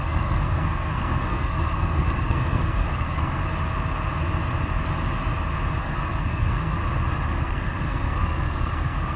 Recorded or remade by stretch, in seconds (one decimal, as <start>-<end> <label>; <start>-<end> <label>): 0.0-3.4 remade; 3.4-5.8 recorded; 5.8-6.8 remade; 6.8-7.4 recorded; 7.4-9.2 remade